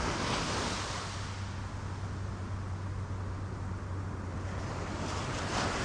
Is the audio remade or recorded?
recorded